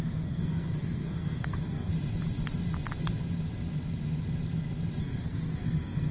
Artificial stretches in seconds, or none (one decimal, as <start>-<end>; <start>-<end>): 0.0-1.9; 5.0-6.1